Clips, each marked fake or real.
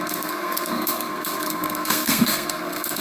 fake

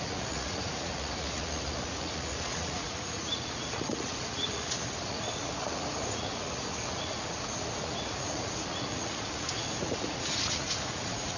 fake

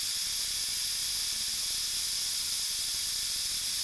real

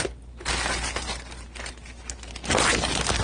real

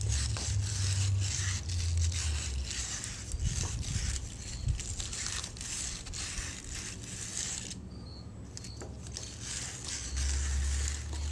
real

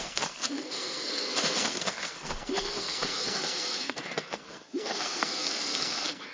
fake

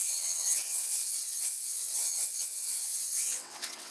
fake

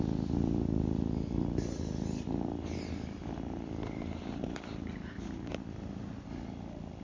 real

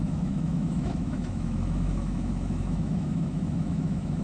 fake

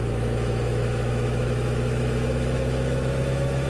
fake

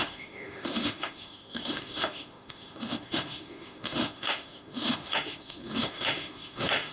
fake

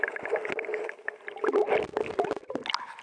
real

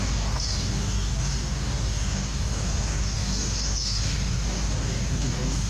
fake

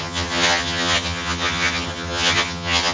fake